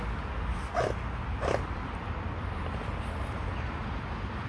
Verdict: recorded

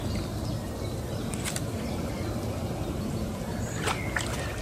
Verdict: recorded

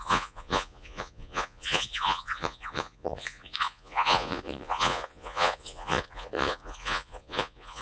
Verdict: remade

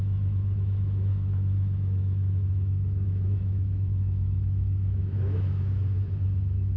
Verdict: remade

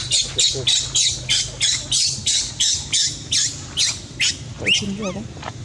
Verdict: recorded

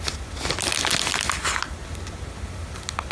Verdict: recorded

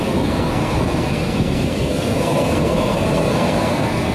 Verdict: remade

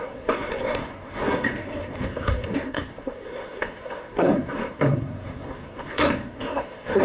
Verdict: remade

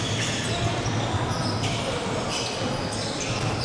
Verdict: recorded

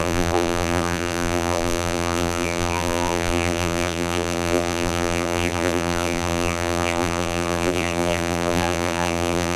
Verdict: remade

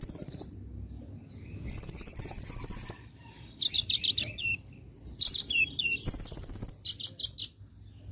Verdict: remade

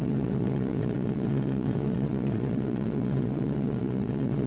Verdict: remade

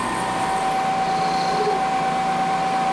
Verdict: recorded